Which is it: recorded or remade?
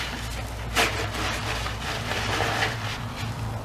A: recorded